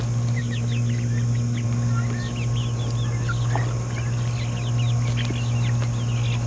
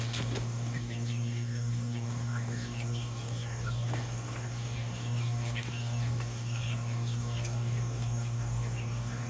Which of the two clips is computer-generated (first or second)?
second